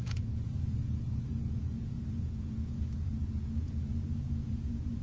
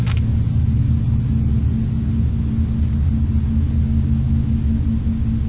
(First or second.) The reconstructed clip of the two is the first